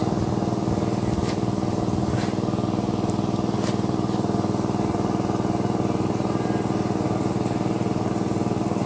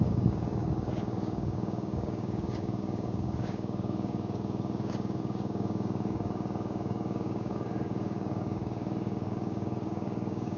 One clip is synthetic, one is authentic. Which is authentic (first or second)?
first